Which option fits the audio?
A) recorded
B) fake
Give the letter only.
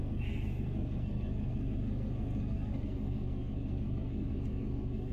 B